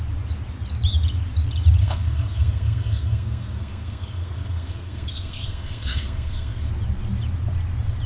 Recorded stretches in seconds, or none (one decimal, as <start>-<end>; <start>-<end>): 0.0-1.8; 6.7-8.1